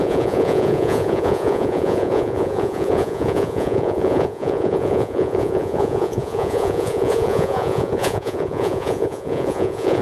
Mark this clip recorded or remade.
remade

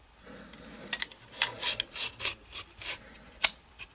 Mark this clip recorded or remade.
recorded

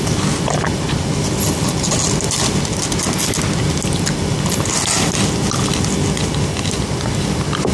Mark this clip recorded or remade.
recorded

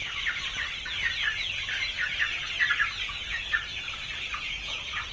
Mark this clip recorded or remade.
recorded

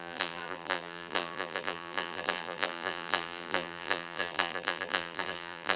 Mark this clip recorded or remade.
remade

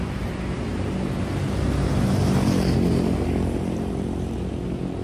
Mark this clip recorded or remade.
remade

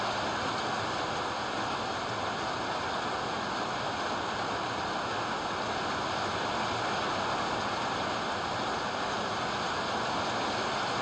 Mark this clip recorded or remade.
recorded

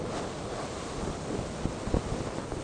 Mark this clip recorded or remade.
recorded